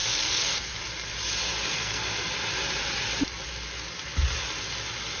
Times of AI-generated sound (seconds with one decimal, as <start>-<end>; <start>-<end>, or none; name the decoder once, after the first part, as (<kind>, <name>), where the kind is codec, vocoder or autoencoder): 0.0-0.8 (codec, SNAC); 1.7-2.3